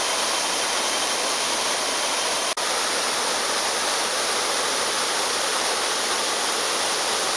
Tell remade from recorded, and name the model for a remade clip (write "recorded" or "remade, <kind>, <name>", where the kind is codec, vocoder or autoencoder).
recorded